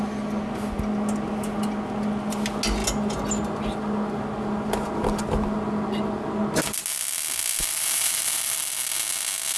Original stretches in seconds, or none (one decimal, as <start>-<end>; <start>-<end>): 0.0-7.6; 8.7-9.6